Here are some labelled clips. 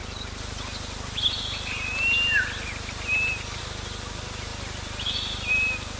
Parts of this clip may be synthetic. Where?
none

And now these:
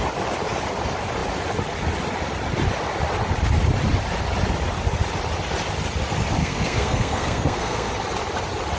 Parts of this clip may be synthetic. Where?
6.4-7.9 (codec, SNAC)

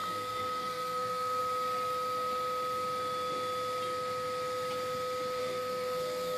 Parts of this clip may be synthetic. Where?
0.0-1.4 (codec, SNAC); 5.4-6.4

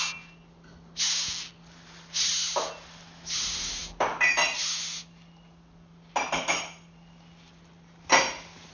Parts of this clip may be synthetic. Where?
none

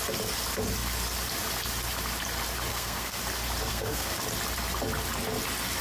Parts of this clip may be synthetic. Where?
2.7-3.2 (codec, SNAC); 3.7-4.2

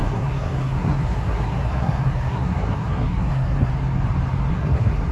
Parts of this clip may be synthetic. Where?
0.0-3.7 (codec, SNAC); 4.5-5.1